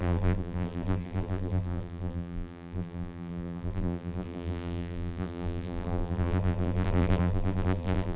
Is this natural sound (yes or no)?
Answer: no